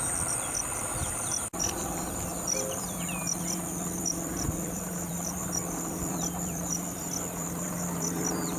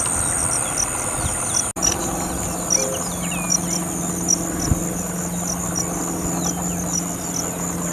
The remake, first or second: first